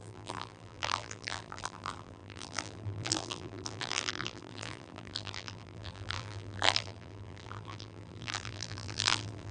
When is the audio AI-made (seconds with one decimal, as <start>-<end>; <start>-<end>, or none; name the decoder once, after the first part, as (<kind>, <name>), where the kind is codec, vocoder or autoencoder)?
0.0-9.5 (vocoder, BigVGAN v2)